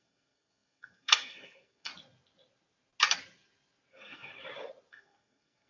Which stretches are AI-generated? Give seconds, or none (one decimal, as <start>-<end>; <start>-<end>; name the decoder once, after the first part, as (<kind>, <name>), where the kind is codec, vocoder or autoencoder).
0.0-1.9 (codec, SNAC); 3.9-4.3; 4.9-5.7